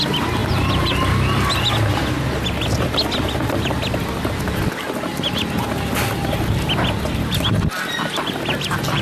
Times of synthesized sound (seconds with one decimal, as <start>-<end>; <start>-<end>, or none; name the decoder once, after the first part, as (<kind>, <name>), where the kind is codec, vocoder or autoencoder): none